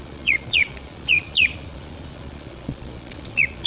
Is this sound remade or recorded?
remade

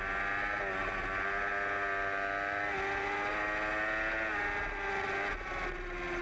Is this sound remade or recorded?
recorded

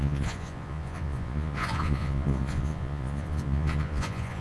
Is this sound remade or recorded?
remade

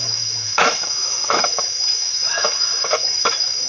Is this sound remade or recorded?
remade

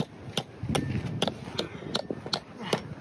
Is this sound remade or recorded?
recorded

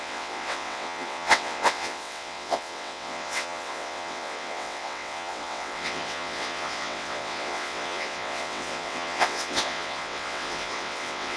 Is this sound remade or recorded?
remade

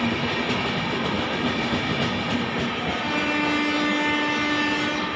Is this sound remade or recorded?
recorded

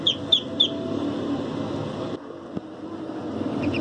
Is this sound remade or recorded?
recorded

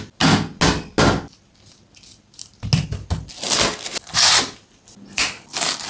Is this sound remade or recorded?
recorded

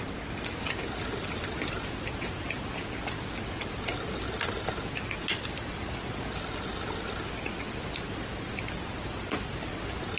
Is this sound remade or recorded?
recorded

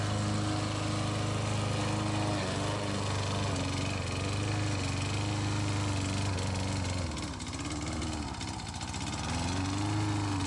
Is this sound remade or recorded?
recorded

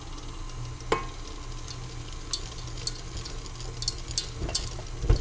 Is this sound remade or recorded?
recorded